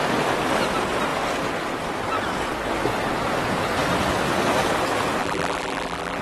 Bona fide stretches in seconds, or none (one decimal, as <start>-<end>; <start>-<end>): 0.0-5.2